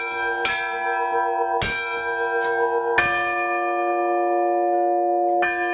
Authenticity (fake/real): real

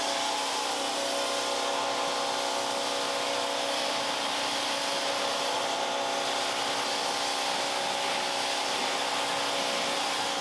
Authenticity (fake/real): real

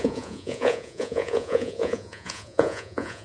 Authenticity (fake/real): fake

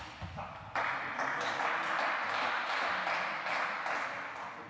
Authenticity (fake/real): real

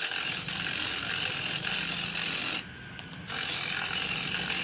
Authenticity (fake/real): real